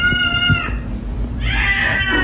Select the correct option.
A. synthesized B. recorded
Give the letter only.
B